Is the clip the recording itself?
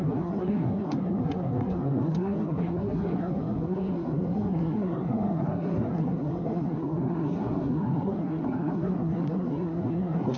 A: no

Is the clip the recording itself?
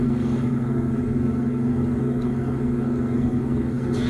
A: no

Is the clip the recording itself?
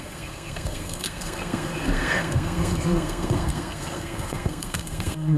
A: no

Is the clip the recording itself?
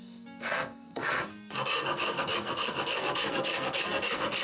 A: no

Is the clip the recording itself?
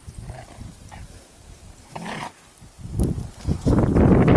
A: yes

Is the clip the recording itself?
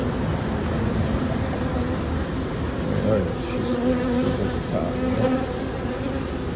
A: yes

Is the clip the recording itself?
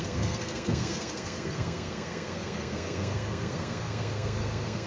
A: no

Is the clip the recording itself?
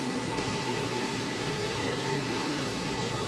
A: no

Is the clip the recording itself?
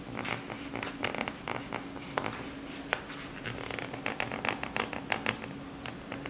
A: yes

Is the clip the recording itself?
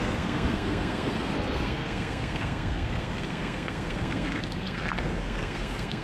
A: no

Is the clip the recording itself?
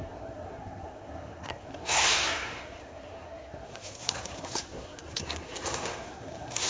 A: no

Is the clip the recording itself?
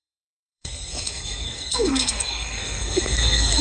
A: no